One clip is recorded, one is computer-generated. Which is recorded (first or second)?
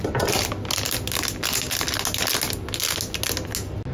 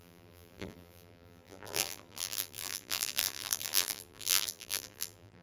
first